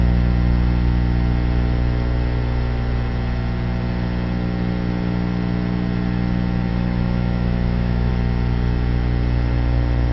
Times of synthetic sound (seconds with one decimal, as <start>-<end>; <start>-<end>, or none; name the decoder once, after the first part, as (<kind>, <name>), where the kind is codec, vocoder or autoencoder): 6.7-8.1 (autoencoder, DAC-VAE)